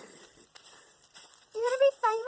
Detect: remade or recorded remade